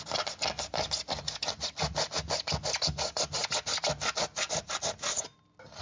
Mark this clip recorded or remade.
recorded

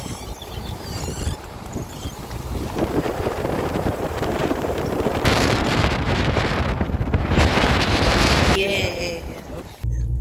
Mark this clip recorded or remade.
remade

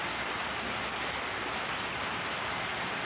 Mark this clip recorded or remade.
recorded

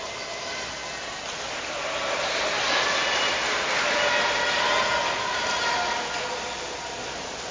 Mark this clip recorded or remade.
recorded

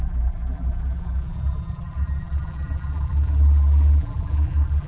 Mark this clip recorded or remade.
remade